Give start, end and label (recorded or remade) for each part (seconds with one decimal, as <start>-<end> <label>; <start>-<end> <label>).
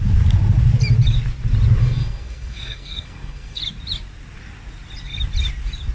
0.0-1.8 recorded; 1.8-3.6 remade; 3.6-5.9 recorded